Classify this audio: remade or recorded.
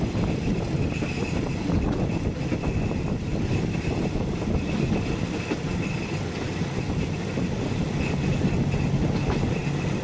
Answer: recorded